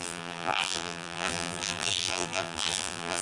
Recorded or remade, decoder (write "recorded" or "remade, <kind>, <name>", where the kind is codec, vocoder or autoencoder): remade, vocoder, BigVGAN v2